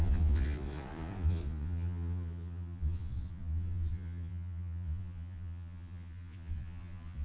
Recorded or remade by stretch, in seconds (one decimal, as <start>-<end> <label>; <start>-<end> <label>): 0.0-7.2 remade

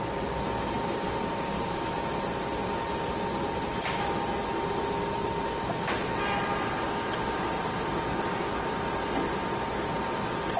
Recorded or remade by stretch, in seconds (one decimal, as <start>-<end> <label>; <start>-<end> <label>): 0.0-10.6 recorded

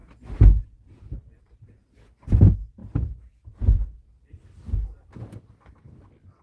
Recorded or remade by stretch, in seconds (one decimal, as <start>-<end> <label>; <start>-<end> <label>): 0.0-6.4 recorded

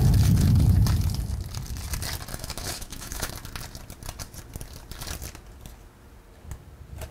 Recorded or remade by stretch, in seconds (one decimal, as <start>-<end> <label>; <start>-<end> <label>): 0.0-2.3 recorded; 2.3-3.3 remade; 3.3-7.1 recorded

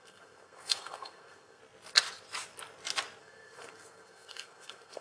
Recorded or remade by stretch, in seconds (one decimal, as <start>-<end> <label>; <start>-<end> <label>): 0.0-1.6 remade; 1.6-3.2 recorded; 3.2-5.0 remade

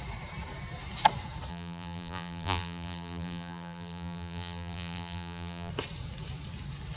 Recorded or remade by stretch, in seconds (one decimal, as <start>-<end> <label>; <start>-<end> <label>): 0.0-1.5 recorded; 1.5-5.7 remade; 5.7-7.0 recorded

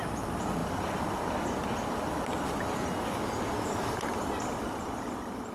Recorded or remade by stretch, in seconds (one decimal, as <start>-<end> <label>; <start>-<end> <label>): 0.0-5.5 recorded

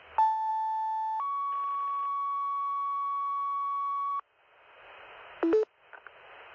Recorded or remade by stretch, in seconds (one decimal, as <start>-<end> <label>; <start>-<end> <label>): 0.0-6.5 recorded